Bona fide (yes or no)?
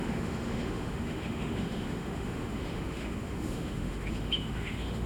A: no